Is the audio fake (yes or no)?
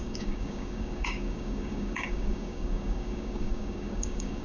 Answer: yes